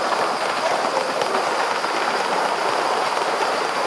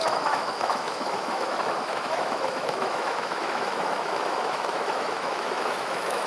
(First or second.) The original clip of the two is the first